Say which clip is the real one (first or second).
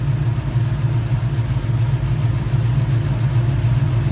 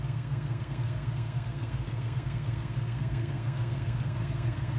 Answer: first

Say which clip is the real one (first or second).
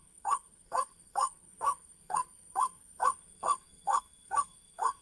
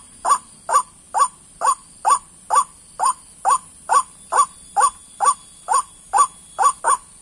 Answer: second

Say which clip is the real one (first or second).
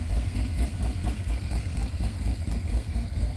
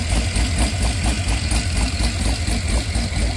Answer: second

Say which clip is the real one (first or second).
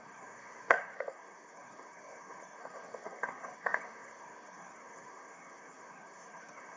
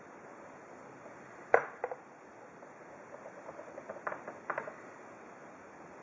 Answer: second